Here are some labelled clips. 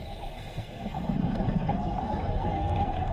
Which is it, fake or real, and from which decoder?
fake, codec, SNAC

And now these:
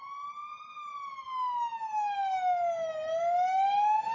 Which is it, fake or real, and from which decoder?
real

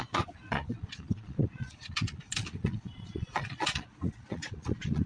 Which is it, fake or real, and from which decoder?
fake, vocoder, Vocos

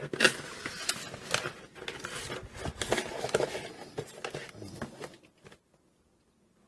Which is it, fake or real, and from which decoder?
real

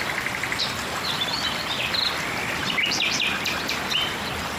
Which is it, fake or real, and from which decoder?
real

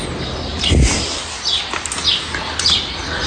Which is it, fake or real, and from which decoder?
real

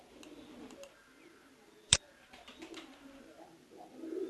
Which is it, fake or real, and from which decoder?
real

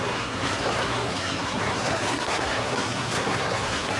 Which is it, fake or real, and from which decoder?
fake, codec, SNAC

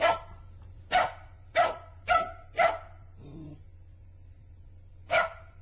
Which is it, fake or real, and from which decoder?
fake, vocoder, BigVGAN v2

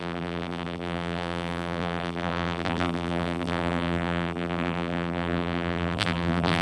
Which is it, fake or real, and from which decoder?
fake, vocoder, BigVGAN v2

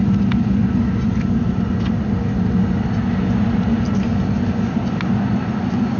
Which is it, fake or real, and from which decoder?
real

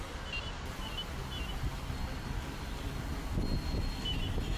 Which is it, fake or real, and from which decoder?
real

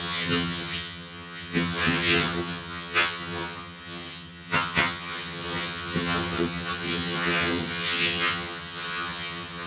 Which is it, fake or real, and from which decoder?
fake, vocoder, HiFi-GAN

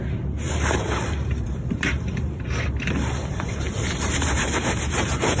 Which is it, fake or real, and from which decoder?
fake, vocoder, BigVGAN v2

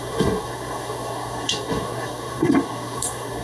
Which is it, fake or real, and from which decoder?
fake, codec, SNAC